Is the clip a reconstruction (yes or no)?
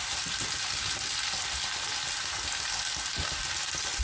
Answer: no